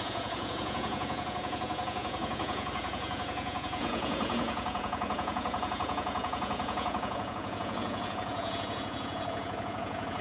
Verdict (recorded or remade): remade